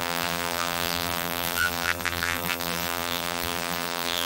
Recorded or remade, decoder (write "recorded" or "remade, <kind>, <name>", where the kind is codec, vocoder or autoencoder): remade, vocoder, BigVGAN v2